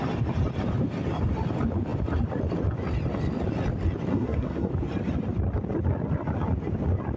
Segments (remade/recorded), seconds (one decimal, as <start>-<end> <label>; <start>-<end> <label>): 0.0-4.1 recorded; 4.1-4.7 remade; 4.7-7.2 recorded